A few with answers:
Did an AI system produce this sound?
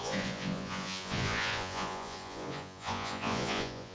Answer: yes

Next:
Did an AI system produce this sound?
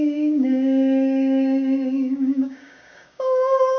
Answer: yes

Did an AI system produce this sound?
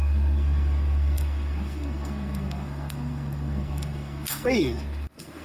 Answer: yes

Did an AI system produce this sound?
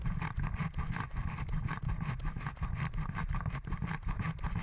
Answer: no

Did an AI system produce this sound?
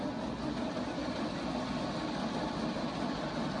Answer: no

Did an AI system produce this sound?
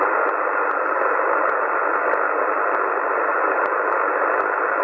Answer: no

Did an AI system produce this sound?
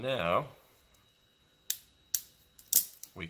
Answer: no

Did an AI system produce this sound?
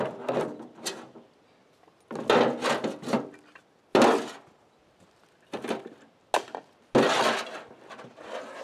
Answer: no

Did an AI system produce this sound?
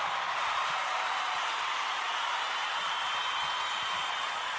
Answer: yes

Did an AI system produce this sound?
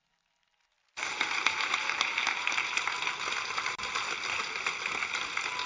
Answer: no